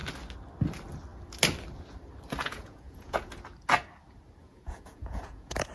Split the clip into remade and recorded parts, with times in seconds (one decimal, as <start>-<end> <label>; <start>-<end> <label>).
0.0-2.4 recorded; 2.4-3.3 remade; 3.3-4.4 recorded; 4.4-5.7 remade